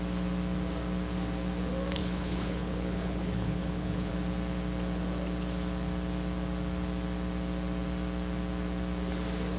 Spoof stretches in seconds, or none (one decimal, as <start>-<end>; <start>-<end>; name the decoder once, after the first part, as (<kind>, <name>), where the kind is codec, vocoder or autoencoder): 2.0-4.1 (codec, HILCodec)